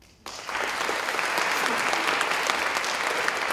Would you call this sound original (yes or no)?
yes